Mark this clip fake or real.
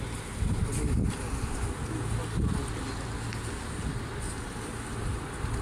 real